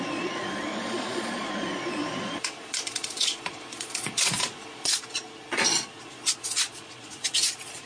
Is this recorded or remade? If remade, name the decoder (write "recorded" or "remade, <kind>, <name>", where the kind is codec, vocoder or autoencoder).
remade, vocoder, Vocos